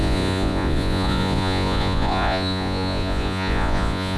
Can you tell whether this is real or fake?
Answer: fake